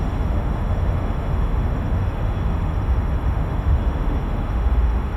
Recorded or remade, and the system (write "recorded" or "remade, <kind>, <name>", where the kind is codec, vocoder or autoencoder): remade, autoencoder, DAC-VAE